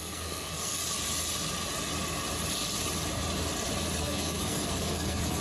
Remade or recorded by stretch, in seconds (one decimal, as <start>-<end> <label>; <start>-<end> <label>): 0.0-0.8 remade; 0.8-4.0 recorded; 4.0-5.4 remade